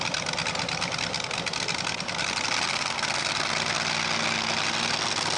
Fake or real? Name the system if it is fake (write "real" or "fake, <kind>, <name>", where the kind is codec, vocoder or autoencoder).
real